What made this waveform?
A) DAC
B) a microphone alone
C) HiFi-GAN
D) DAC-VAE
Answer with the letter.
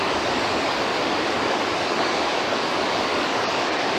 A